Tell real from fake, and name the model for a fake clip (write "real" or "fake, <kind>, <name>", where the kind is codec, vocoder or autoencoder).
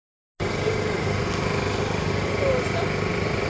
real